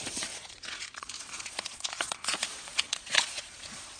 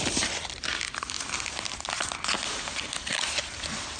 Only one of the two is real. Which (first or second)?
second